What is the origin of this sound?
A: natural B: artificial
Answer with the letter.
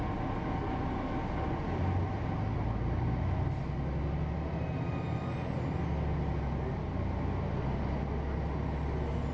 A